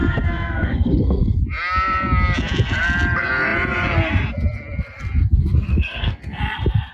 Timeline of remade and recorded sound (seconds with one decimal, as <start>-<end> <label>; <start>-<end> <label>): 0.0-1.4 remade; 1.4-5.7 recorded; 5.7-6.4 remade; 6.4-6.9 recorded